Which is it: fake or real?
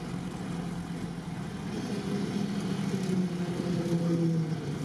real